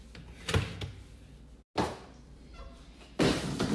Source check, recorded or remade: recorded